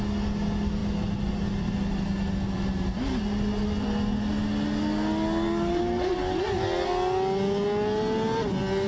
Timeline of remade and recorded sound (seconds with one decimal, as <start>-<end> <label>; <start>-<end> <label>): 0.0-8.9 recorded